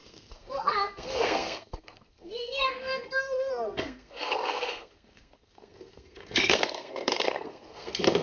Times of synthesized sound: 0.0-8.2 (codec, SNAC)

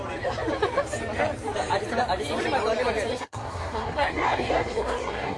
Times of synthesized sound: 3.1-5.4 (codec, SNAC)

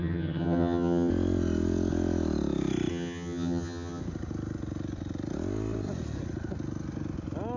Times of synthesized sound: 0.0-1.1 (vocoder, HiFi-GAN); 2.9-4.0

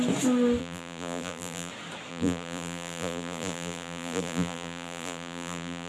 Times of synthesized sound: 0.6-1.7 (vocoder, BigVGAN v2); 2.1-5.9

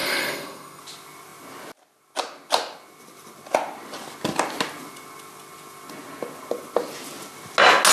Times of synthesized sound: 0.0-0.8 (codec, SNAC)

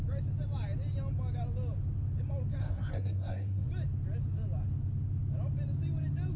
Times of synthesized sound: 2.6-3.7 (codec, SNAC)

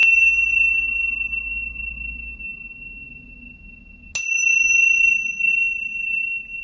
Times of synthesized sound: none

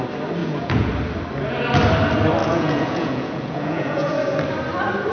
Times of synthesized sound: 0.4-0.9 (vocoder, Vocos); 2.4-4.1